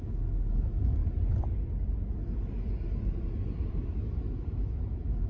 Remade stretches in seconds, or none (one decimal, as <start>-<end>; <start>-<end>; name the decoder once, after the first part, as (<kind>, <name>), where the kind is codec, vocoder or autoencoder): 0.0-1.0 (autoencoder, DAC-VAE); 3.7-5.3